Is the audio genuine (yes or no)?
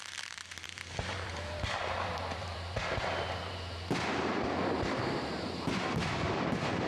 no